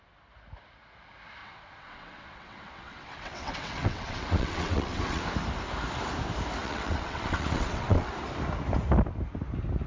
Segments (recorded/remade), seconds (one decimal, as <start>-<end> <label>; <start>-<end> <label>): 0.0-1.4 recorded; 1.4-5.2 remade; 5.2-6.6 recorded; 6.6-8.1 remade; 8.1-9.9 recorded